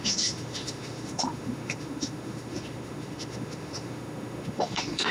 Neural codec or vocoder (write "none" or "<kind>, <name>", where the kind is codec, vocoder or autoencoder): autoencoder, DAC-VAE